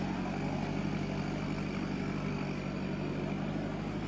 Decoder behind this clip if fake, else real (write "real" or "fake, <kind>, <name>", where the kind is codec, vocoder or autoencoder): real